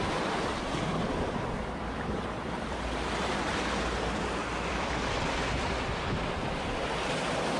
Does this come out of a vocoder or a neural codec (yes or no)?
yes